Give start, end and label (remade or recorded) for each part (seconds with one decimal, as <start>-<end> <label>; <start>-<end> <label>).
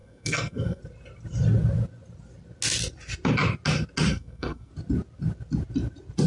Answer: 0.0-0.8 remade; 0.8-4.1 recorded; 4.1-4.7 remade; 4.7-6.3 recorded